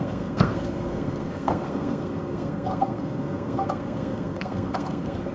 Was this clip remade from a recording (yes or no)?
yes